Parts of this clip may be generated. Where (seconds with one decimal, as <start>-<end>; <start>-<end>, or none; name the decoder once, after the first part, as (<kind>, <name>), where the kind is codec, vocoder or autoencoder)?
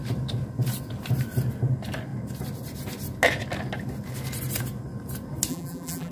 5.5-6.1 (vocoder, BigVGAN v2)